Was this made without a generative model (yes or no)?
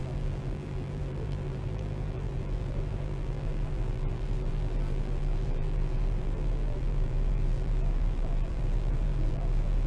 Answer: no